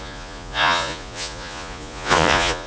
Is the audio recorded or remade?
remade